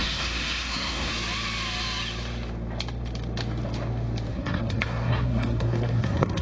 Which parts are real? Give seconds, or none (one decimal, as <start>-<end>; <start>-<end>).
1.1-4.3

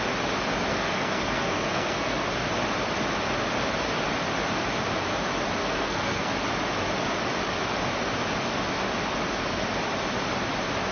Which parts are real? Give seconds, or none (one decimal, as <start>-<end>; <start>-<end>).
0.0-0.7; 2.3-5.6; 6.3-10.9

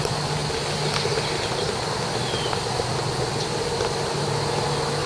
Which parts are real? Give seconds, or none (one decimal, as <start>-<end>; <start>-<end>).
0.0-5.1

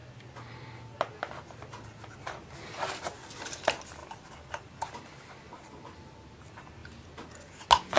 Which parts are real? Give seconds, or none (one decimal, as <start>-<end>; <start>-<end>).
0.0-8.0

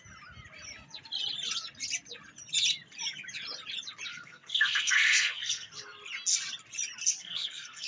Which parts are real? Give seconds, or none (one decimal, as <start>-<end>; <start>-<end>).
0.0-4.1; 5.7-7.2

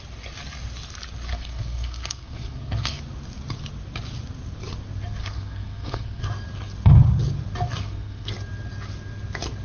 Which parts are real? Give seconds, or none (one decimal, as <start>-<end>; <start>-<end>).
0.0-1.3; 3.0-5.2; 6.2-7.8; 8.3-9.6